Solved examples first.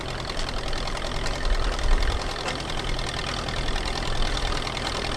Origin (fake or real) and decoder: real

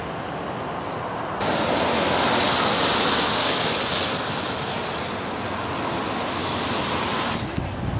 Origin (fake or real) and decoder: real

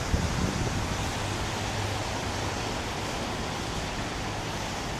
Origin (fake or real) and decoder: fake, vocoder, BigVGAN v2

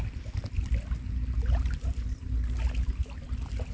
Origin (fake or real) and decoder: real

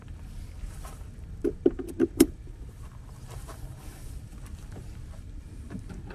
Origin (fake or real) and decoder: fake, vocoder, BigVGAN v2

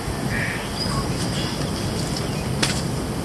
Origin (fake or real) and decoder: real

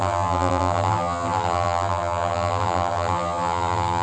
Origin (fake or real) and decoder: fake, vocoder, BigVGAN v2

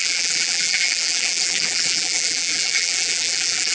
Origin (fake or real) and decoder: fake, vocoder, BigVGAN v2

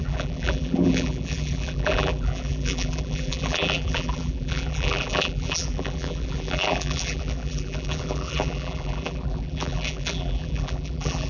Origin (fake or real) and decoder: fake, vocoder, BigVGAN v2